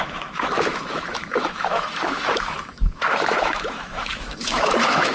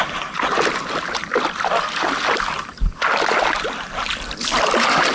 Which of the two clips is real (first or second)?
second